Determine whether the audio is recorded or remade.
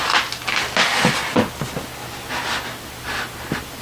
recorded